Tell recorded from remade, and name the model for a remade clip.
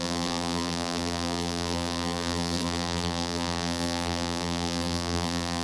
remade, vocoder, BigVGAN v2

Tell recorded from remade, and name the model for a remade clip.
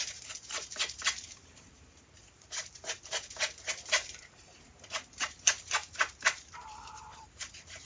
remade, vocoder, BigVGAN v2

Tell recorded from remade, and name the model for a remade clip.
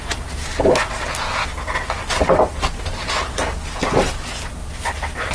recorded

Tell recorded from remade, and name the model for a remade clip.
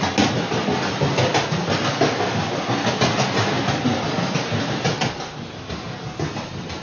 recorded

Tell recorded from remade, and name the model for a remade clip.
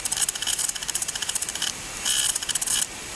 remade, vocoder, BigVGAN v2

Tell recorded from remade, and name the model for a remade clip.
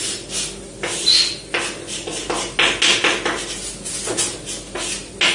recorded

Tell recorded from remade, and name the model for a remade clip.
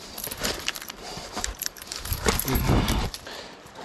remade, vocoder, BigVGAN v2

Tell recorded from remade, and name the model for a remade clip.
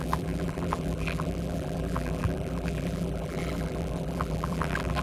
remade, vocoder, BigVGAN v2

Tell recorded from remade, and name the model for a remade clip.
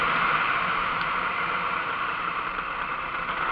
remade, vocoder, BigVGAN v2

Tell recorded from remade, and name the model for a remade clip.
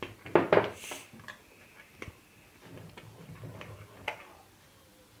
recorded